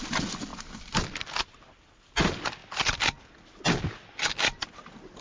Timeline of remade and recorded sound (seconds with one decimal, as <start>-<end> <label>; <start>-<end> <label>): 0.0-5.2 recorded